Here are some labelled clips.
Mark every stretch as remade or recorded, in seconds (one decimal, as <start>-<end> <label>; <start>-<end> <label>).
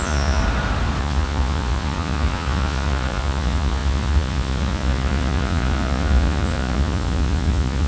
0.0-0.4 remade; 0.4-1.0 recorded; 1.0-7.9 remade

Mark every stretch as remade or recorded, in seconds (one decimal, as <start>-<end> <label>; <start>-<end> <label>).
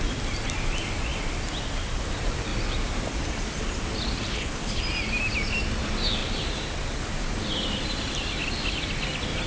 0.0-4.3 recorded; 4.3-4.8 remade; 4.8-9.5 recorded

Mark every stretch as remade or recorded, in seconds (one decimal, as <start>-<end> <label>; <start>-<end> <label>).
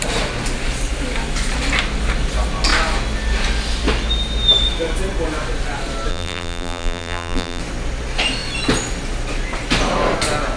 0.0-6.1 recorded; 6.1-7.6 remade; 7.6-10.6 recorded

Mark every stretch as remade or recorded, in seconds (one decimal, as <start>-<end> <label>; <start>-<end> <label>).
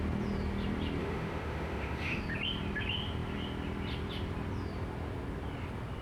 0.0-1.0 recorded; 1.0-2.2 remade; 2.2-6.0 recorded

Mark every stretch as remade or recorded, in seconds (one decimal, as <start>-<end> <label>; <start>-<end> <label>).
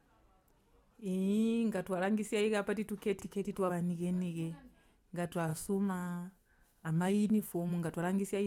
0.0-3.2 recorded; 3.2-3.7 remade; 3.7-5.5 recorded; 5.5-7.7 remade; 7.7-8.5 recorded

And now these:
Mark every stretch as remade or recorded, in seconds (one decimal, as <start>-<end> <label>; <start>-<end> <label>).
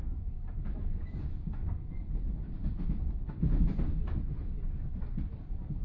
0.0-1.2 remade; 1.2-5.8 recorded